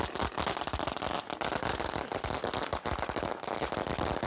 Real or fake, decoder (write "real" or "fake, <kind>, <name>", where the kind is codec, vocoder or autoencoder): real